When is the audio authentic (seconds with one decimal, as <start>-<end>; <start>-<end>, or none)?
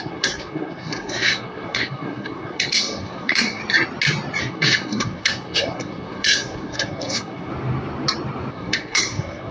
3.6-4.4; 7.5-8.5